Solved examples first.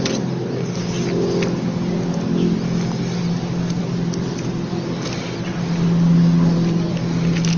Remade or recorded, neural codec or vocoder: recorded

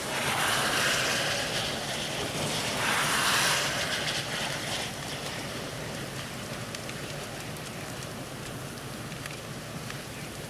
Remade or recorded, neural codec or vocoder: remade, vocoder, BigVGAN v2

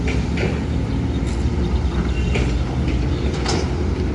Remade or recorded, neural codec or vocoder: recorded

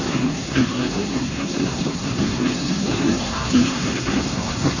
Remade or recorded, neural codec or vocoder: remade, codec, SNAC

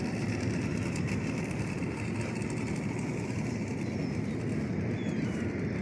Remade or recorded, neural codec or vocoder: recorded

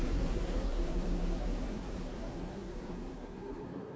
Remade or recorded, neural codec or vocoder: remade, codec, SNAC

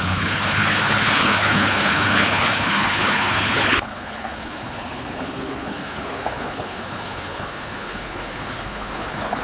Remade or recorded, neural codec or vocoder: remade, codec, HILCodec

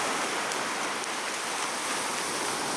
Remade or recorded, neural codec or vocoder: recorded